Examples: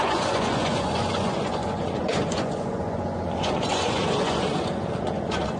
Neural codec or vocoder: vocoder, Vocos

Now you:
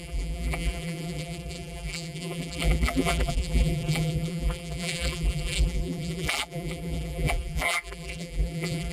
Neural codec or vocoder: vocoder, BigVGAN v2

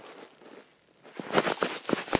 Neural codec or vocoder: none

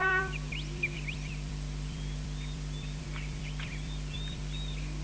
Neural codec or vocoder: vocoder, BigVGAN v2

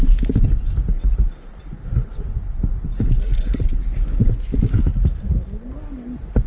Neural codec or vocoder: none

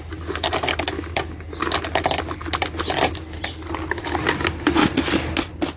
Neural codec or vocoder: none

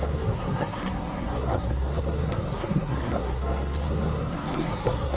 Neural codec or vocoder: codec, SNAC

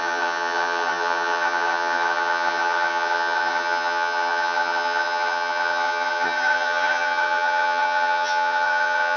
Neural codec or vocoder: vocoder, HiFi-GAN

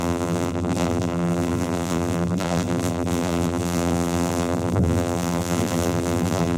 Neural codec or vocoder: vocoder, BigVGAN v2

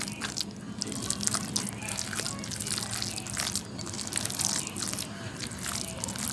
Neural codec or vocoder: none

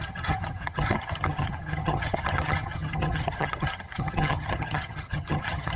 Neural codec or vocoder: vocoder, HiFi-GAN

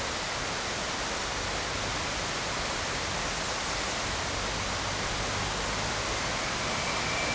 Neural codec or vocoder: none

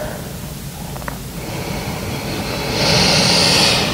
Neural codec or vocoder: none